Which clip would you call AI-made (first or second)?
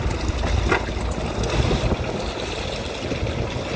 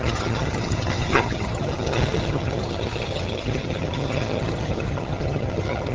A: second